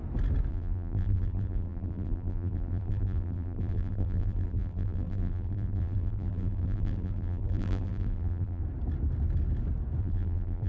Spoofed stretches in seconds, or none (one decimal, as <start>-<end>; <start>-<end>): 0.5-8.6; 10.0-10.7